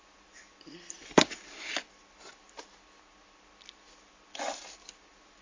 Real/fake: real